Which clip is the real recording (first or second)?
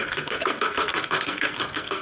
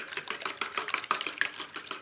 second